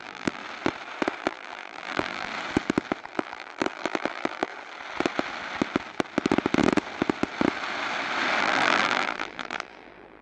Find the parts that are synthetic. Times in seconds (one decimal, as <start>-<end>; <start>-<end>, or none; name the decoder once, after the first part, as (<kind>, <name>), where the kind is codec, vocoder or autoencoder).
0.0-0.4 (vocoder, BigVGAN v2); 1.2-2.3; 3.1-4.5; 8.4-10.2